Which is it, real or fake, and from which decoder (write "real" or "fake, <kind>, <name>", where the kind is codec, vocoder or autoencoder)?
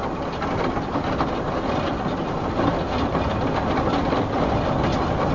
real